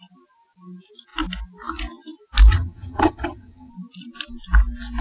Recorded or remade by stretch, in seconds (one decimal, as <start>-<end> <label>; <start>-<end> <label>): 0.0-2.5 recorded; 2.5-3.7 remade; 3.7-5.0 recorded